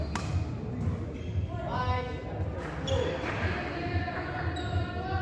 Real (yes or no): yes